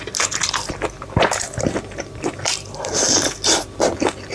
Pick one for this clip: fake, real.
fake